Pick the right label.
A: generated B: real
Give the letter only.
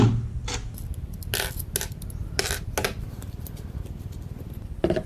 B